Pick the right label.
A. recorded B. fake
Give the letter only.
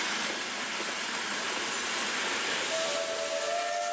A